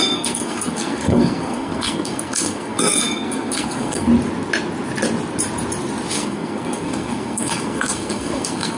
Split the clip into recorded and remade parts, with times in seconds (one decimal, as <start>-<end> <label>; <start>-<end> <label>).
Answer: 0.0-4.1 remade; 4.1-6.1 recorded; 6.1-8.8 remade